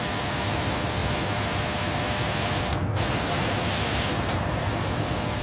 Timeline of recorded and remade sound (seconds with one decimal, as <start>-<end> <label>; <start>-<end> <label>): 0.0-5.4 recorded